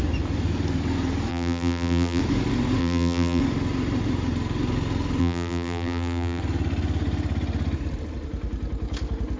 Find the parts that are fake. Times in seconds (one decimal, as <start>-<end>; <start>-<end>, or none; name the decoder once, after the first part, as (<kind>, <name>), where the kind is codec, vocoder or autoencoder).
1.3-2.2 (vocoder, BigVGAN v2); 2.8-3.4; 5.2-6.4